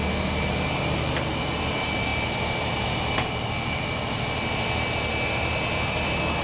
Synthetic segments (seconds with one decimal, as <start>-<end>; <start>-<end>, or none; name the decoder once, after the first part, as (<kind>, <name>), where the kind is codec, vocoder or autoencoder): none